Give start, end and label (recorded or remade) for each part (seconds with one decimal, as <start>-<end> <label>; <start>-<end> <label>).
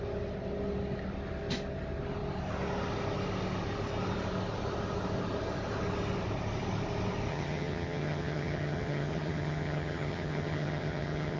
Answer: 0.0-7.3 recorded; 7.3-11.4 remade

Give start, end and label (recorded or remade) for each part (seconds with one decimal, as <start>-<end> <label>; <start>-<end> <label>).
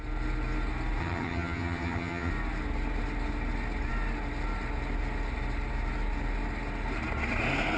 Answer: 0.0-1.0 recorded; 1.0-2.3 remade; 2.3-7.8 recorded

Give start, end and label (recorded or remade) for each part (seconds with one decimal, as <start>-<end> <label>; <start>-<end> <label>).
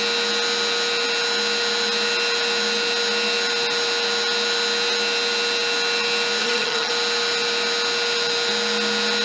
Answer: 0.0-6.4 recorded; 6.4-6.9 remade; 6.9-9.2 recorded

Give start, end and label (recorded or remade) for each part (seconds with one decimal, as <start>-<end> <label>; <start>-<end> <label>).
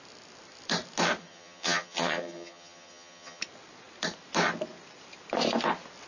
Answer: 0.0-1.2 recorded; 1.2-3.4 remade; 3.4-6.1 recorded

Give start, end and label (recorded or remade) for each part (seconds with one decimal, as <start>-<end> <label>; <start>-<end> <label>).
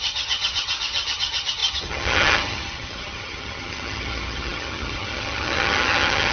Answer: 0.0-6.3 remade